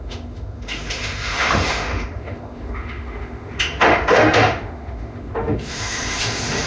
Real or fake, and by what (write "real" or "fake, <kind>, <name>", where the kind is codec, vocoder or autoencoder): fake, autoencoder, DAC-VAE